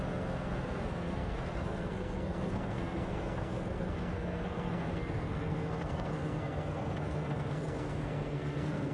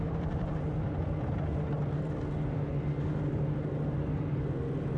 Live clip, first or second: second